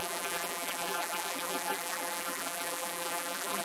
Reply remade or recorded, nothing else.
remade